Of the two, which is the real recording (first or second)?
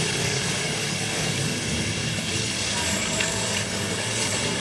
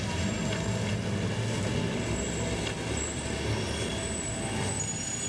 second